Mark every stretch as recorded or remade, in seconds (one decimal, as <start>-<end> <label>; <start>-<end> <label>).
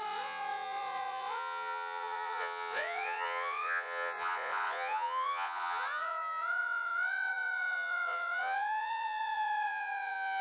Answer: 0.0-10.4 remade